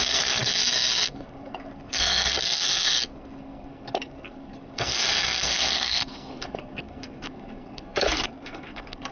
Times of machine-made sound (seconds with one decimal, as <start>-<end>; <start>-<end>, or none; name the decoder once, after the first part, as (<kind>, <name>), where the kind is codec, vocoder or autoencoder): 0.0-9.1 (codec, SNAC)